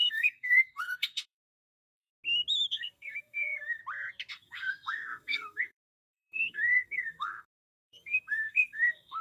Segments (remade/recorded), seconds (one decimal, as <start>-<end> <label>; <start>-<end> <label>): 0.0-2.1 remade; 2.1-2.7 recorded; 2.7-3.8 remade; 3.8-4.3 recorded; 4.3-9.2 remade